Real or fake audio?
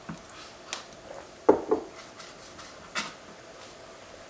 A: real